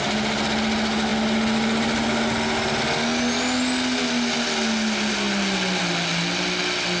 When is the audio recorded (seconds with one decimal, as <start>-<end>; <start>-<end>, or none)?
0.0-7.0